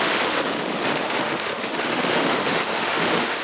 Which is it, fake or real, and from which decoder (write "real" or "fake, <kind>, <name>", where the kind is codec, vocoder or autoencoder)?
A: fake, autoencoder, DAC-VAE